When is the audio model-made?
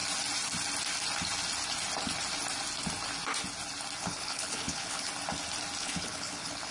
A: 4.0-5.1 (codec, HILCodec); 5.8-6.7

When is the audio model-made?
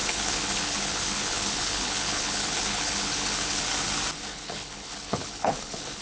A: 0.0-3.6 (codec, HILCodec); 4.3-6.0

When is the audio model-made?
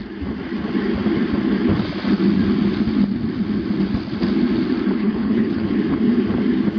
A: 5.0-5.7 (codec, HILCodec)